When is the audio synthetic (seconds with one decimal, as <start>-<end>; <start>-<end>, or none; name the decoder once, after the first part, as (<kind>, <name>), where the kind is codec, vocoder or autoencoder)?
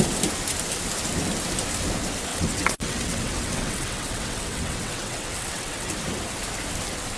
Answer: 2.3-5.9 (vocoder, WaveNeXt)